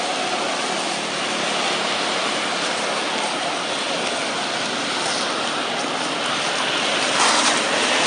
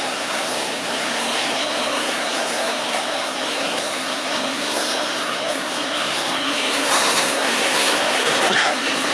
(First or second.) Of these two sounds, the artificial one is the second